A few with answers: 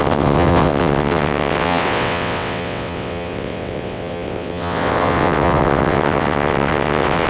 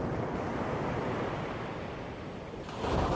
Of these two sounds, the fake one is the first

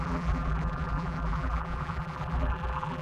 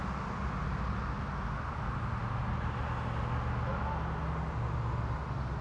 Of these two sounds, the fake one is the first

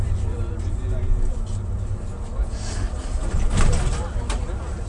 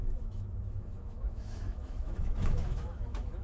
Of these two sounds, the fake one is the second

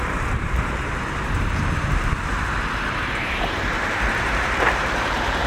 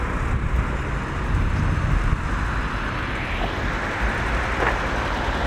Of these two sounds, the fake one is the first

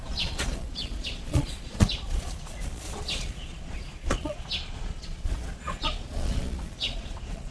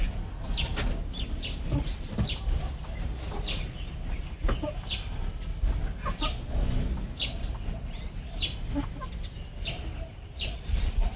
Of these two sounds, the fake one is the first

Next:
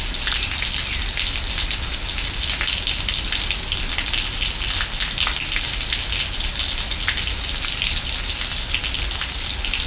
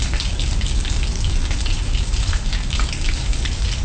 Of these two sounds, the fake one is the second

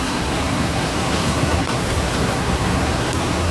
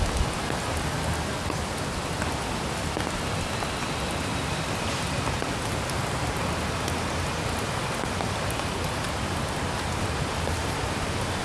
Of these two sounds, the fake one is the first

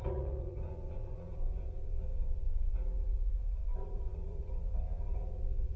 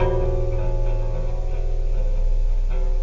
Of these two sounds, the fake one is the first